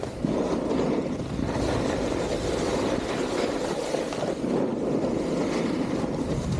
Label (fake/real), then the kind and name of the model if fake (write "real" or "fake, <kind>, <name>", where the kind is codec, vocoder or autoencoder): real